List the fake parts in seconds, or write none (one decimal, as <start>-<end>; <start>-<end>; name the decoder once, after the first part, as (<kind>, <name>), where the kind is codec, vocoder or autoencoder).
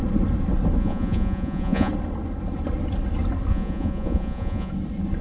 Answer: 0.8-1.9 (vocoder, Vocos); 3.5-4.7